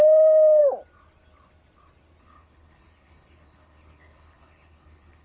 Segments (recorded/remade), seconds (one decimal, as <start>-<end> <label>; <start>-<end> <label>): 0.0-0.6 remade; 0.6-2.2 recorded; 2.2-5.2 remade